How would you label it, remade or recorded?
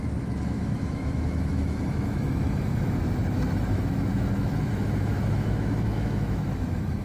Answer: remade